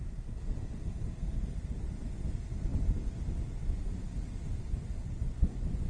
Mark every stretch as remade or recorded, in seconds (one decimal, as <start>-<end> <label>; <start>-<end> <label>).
0.0-5.0 recorded; 5.0-5.9 remade